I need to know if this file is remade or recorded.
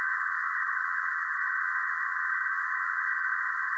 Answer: remade